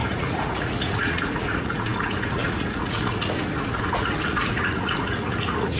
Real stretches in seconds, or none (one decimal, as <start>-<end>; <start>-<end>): none